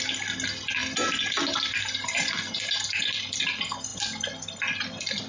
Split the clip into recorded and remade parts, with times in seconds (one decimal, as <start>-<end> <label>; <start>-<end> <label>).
0.0-5.3 recorded

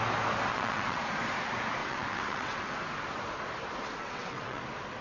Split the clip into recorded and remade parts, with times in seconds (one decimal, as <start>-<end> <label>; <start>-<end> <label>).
0.0-0.5 recorded; 0.5-1.0 remade; 1.0-1.8 recorded; 1.8-2.7 remade; 2.7-4.0 recorded; 4.0-4.6 remade; 4.6-5.0 recorded

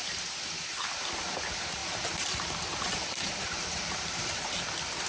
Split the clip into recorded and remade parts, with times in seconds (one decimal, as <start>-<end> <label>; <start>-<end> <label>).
0.0-1.8 recorded; 1.8-4.6 remade; 4.6-5.1 recorded

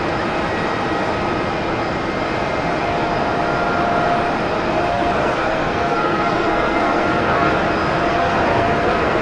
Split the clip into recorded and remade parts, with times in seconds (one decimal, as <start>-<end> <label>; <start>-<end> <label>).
0.0-4.9 recorded; 4.9-7.5 remade; 7.5-8.1 recorded; 8.1-9.2 remade

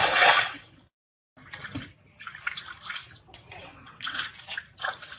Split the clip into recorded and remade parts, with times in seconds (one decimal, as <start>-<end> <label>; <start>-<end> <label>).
0.0-0.9 remade; 0.9-3.0 recorded; 3.0-4.2 remade; 4.2-5.2 recorded

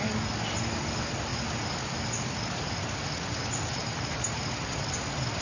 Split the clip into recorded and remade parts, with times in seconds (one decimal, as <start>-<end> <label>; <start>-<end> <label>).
0.0-5.4 recorded

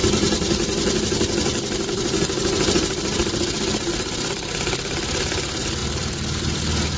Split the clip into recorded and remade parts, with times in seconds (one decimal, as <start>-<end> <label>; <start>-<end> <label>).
0.0-1.0 remade; 1.0-1.5 recorded; 1.5-5.3 remade; 5.3-5.8 recorded; 5.8-6.6 remade; 6.6-7.0 recorded